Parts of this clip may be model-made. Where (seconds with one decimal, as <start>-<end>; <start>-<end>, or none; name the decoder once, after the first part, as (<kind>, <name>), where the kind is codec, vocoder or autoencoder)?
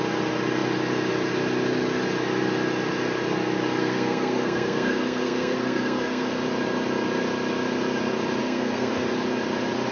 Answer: 3.8-6.3 (codec, SNAC); 8.4-8.9